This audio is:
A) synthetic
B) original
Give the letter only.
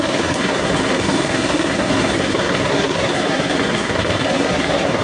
A